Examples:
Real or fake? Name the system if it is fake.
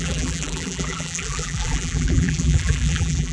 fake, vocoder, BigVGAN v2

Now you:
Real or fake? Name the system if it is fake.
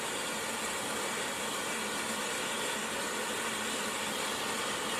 real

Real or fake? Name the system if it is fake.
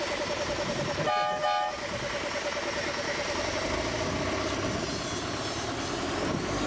real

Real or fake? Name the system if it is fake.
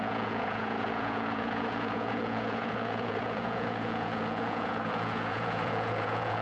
fake, vocoder, Vocos